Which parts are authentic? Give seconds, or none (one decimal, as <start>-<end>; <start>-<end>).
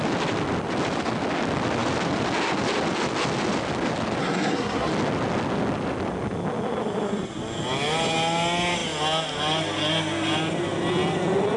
0.0-4.2; 4.9-11.6